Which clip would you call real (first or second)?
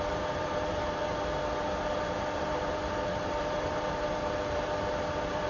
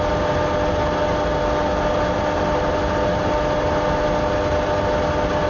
second